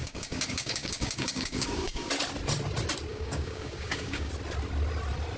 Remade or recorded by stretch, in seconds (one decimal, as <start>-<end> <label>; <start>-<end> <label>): 0.0-2.1 remade; 2.1-3.1 recorded; 3.1-4.3 remade; 4.3-5.4 recorded